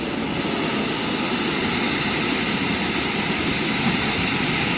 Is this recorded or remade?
recorded